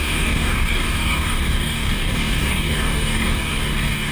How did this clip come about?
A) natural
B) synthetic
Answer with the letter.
B